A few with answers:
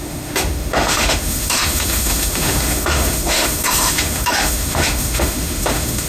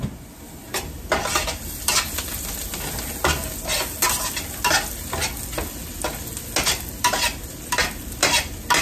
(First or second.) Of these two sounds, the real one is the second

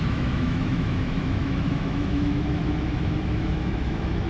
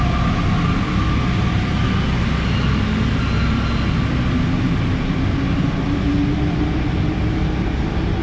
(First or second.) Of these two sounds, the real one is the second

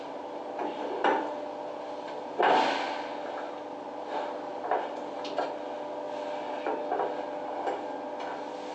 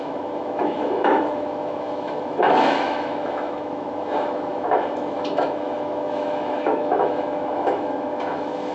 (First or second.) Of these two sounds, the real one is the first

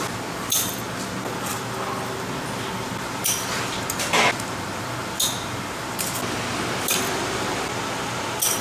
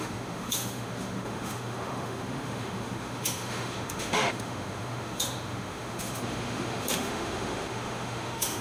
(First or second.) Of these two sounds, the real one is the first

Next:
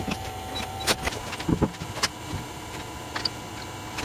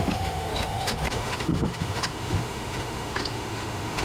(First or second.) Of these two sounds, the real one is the first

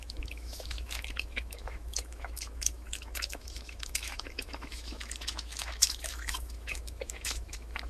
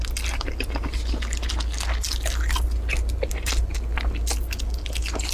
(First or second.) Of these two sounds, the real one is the second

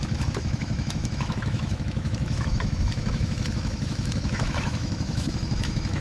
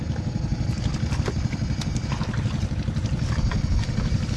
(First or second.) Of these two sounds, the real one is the second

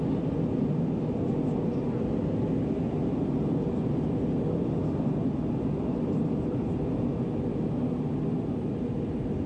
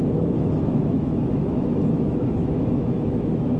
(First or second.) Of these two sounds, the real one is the first